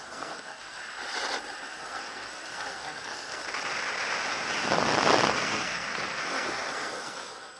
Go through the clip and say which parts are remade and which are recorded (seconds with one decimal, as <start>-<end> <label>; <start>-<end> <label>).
0.0-0.8 remade; 0.8-1.7 recorded; 1.7-3.4 remade; 3.4-5.3 recorded; 5.3-7.6 remade